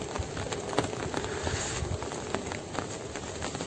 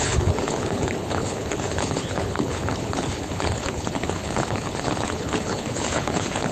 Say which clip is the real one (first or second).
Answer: first